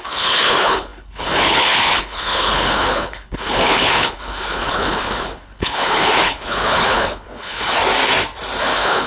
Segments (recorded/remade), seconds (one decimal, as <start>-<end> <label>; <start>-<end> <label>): 0.0-7.8 remade; 7.8-8.6 recorded; 8.6-9.1 remade